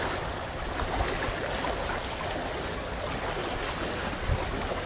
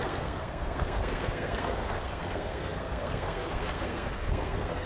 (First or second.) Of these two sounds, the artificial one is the second